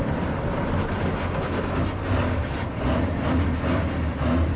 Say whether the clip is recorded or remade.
recorded